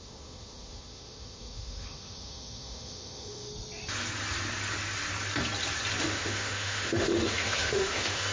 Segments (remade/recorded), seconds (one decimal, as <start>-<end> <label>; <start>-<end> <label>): 0.0-3.5 remade; 3.5-6.0 recorded; 6.0-8.3 remade